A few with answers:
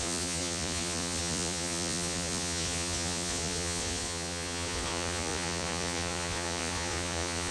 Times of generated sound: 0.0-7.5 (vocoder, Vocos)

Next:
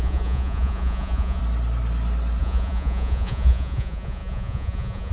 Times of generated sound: 0.0-1.4 (vocoder, Vocos); 2.4-5.1